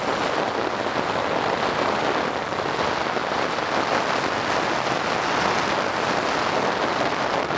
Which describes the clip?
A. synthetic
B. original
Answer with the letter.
B